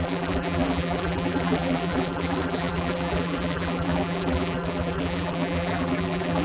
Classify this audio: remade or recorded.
remade